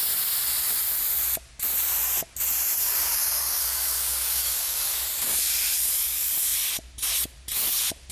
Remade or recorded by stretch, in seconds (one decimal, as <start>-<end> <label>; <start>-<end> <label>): 0.0-2.8 recorded; 2.8-5.0 remade; 5.0-8.1 recorded